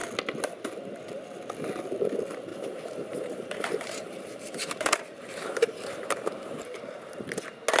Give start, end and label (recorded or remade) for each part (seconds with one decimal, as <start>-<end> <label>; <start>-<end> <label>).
0.0-2.5 recorded; 2.5-7.2 remade; 7.2-7.8 recorded

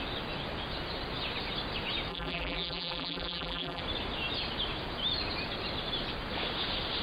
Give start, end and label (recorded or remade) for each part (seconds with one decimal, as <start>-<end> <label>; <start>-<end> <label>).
0.0-2.1 recorded; 2.1-3.8 remade; 3.8-7.0 recorded